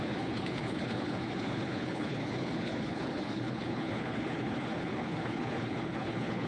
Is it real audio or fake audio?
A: fake